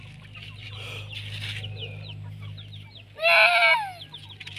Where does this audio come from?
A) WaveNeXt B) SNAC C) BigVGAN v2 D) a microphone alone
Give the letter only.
D